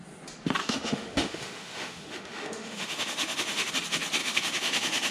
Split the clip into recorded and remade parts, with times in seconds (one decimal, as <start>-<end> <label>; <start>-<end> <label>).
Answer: 0.0-0.6 recorded; 0.6-3.7 remade; 3.7-4.2 recorded; 4.2-5.1 remade